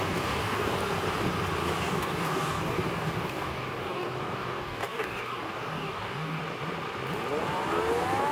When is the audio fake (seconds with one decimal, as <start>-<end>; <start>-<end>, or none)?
0.0-0.8; 1.8-6.4